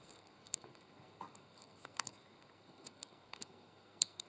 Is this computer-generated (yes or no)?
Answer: yes